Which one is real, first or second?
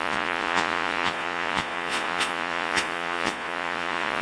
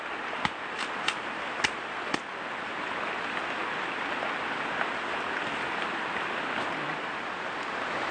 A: second